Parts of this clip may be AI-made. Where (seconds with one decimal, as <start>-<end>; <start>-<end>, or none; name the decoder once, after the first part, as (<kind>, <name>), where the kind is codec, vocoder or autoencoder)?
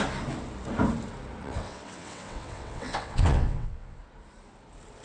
1.4-4.0 (vocoder, WaveNeXt)